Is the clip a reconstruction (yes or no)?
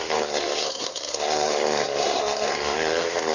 yes